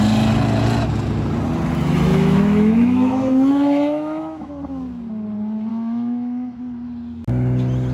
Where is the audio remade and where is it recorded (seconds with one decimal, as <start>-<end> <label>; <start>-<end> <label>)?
0.0-2.1 recorded; 2.1-4.5 remade; 4.5-5.7 recorded; 5.7-6.6 remade; 6.6-7.9 recorded